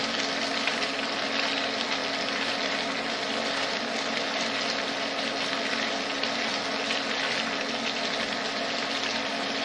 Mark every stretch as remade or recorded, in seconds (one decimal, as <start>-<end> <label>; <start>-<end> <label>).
0.0-9.6 recorded